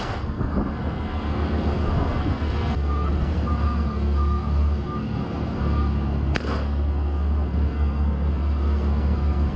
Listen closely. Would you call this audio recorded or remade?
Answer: remade